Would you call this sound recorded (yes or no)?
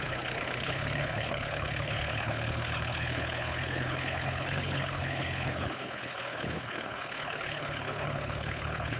no